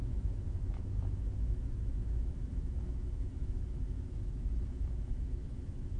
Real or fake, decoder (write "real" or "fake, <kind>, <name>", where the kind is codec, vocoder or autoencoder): fake, autoencoder, DAC-VAE